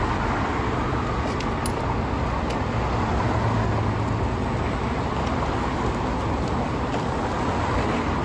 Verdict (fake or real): real